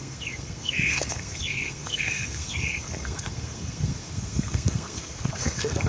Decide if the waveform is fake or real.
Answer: fake